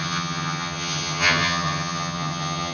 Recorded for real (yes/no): no